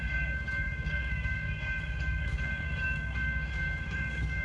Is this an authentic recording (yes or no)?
no